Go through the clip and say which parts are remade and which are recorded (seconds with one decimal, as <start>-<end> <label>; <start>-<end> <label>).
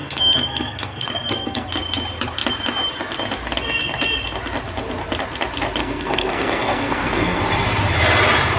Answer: 0.0-1.7 remade; 1.7-5.8 recorded; 5.8-7.4 remade; 7.4-8.6 recorded